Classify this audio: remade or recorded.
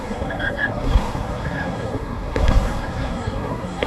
remade